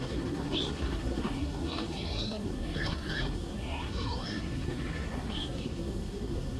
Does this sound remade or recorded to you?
remade